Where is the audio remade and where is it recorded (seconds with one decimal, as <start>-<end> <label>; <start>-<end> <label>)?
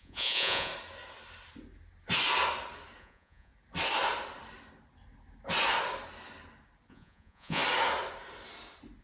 0.0-0.7 remade; 0.7-3.0 recorded; 3.0-3.5 remade; 3.5-6.9 recorded; 6.9-7.6 remade; 7.6-9.0 recorded